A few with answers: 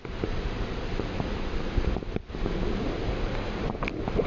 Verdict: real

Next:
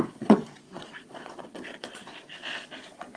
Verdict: fake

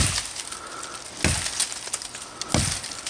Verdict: real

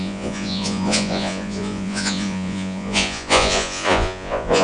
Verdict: fake